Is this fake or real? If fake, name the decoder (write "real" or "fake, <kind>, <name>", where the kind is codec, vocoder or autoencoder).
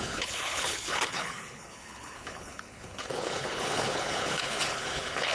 fake, codec, HILCodec